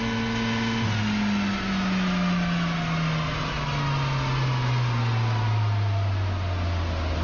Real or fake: real